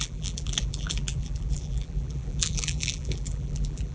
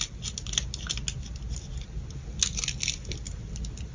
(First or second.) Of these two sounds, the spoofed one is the first